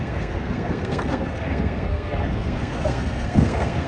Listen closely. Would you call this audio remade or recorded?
remade